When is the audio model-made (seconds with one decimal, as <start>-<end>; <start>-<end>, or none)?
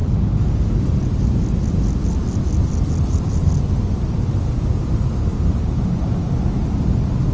none